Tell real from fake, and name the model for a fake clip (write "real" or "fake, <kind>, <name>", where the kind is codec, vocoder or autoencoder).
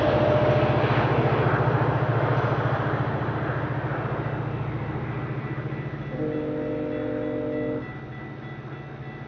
real